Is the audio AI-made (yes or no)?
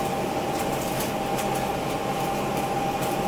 no